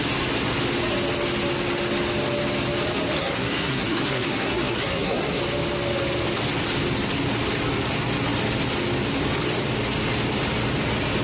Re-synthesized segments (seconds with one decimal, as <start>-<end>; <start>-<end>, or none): 3.2-5.4